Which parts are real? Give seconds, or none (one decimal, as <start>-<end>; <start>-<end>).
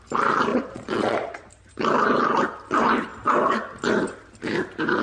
0.0-0.5; 1.5-5.0